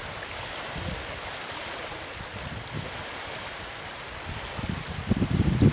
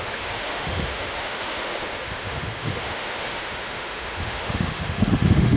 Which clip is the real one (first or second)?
first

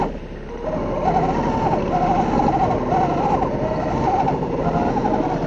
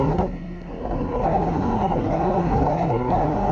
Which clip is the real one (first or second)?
first